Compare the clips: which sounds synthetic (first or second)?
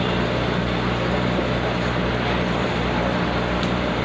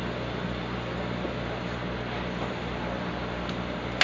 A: first